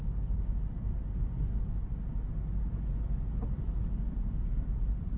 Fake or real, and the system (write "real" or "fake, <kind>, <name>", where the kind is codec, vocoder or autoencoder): real